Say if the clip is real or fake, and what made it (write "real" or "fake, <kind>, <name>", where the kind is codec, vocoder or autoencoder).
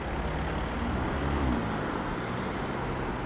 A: real